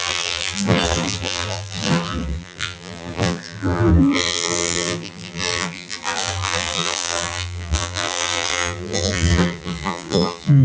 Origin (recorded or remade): remade